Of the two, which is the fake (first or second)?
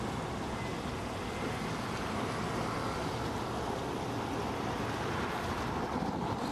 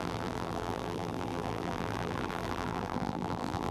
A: second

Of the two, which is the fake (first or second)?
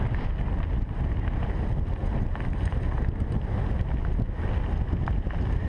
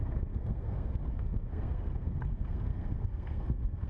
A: second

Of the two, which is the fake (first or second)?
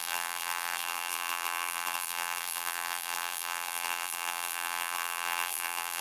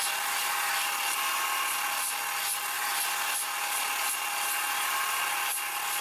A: first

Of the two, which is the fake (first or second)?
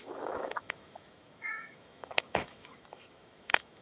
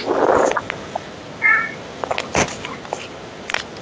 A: first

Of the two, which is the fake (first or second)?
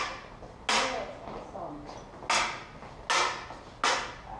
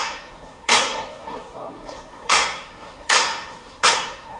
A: second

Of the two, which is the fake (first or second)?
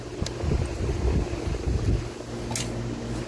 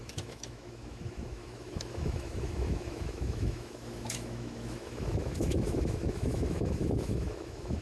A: second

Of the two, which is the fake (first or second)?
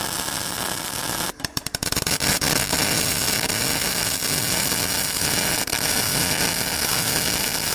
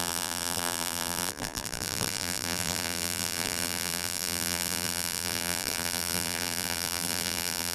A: second